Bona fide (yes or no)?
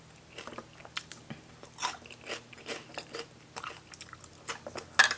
yes